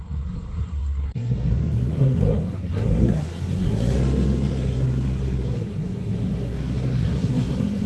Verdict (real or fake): fake